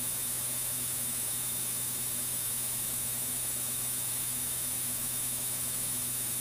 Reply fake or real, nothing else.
fake